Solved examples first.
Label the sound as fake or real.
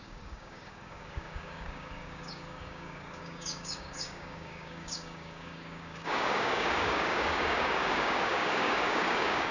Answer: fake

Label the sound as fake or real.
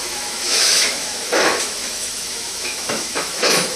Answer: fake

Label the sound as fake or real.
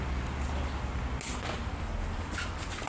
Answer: real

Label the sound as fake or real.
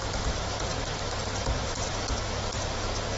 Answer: real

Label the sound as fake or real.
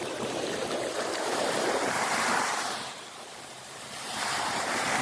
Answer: fake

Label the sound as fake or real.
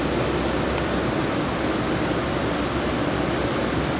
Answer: real